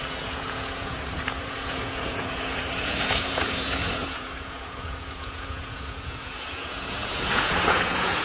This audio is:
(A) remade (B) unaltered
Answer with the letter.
A